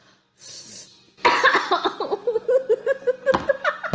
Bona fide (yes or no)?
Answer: yes